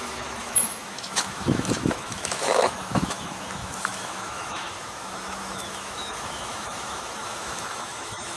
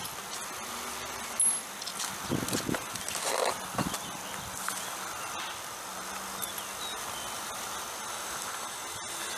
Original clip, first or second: second